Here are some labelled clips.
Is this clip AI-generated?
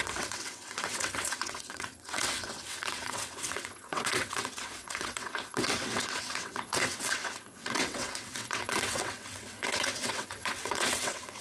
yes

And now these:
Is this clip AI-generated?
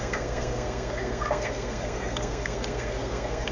yes